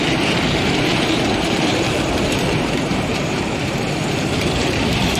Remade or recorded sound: remade